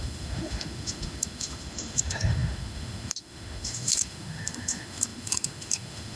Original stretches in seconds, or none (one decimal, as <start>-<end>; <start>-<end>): none